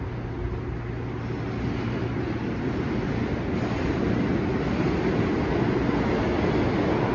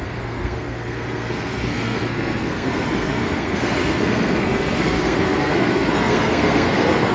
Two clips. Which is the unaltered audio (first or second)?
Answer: first